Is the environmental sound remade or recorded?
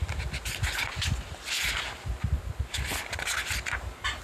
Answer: recorded